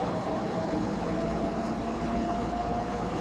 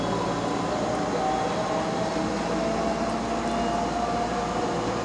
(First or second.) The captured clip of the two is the second